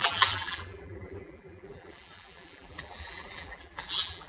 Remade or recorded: remade